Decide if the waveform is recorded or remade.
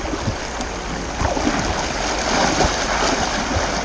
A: recorded